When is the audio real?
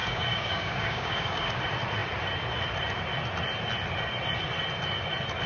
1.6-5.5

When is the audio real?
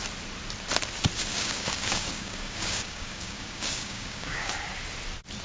0.0-1.3; 4.5-5.4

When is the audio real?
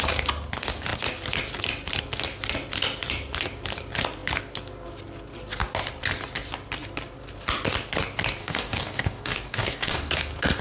0.0-8.4; 10.1-10.6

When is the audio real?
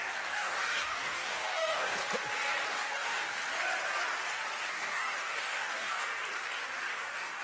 2.0-2.7; 3.4-4.7; 6.1-6.8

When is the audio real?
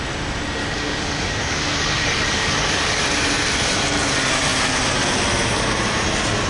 0.0-0.6; 3.0-6.5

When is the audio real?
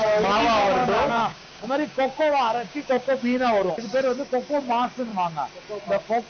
0.0-0.8; 3.7-6.3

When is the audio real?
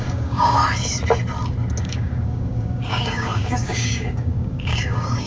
0.6-1.8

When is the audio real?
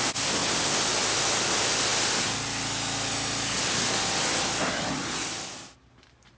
0.0-6.4